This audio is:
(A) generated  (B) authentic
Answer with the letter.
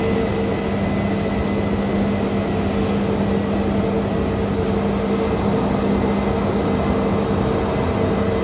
B